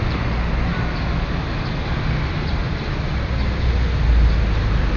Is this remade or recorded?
recorded